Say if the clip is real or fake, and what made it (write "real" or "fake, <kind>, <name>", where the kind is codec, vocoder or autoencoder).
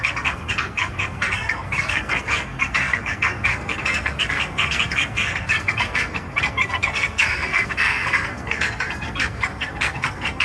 fake, codec, SNAC